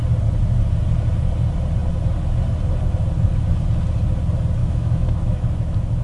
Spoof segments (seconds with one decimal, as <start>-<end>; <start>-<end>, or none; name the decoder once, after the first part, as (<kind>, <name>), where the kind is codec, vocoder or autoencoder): 4.6-6.0 (autoencoder, DAC-VAE)